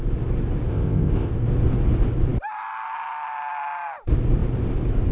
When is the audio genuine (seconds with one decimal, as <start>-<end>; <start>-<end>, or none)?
0.0-0.7; 1.3-5.1